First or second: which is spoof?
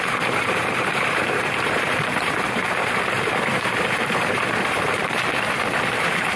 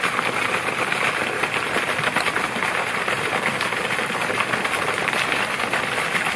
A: first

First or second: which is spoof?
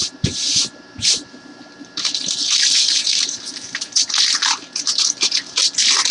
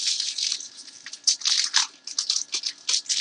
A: first